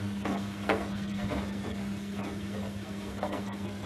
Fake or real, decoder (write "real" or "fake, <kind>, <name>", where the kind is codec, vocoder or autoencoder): fake, codec, SNAC